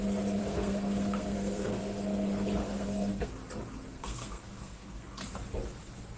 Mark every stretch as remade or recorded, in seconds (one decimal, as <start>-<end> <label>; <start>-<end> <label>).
0.0-0.4 recorded; 0.4-1.8 remade; 1.8-2.6 recorded; 2.6-3.3 remade; 3.3-3.9 recorded; 3.9-5.2 remade; 5.2-6.2 recorded